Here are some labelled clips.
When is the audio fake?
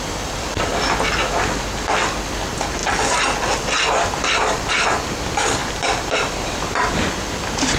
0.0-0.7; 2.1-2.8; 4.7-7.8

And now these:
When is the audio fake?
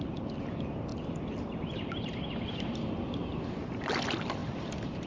4.4-5.1